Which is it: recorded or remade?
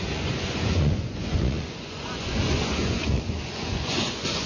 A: remade